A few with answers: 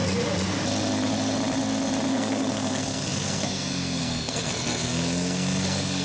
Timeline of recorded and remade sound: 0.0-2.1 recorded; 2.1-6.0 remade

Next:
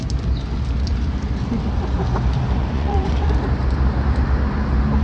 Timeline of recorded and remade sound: 0.0-2.6 recorded; 2.6-3.3 remade; 3.3-5.0 recorded

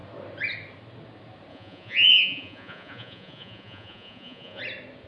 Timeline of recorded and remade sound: 0.0-1.5 recorded; 1.5-4.6 remade; 4.6-5.1 recorded

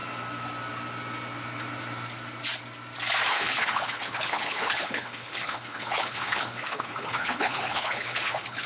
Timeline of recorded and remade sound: 0.0-3.3 recorded; 3.3-8.7 remade

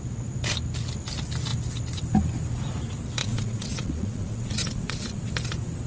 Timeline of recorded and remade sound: 0.0-3.2 recorded; 3.2-5.3 remade; 5.3-5.9 recorded

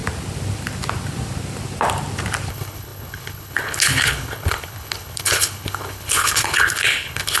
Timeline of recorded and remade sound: 0.0-2.5 recorded; 2.5-7.4 remade